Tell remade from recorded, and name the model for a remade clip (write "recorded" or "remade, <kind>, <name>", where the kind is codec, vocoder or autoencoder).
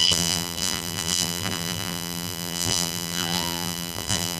remade, vocoder, BigVGAN v2